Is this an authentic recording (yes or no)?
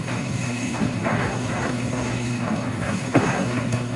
no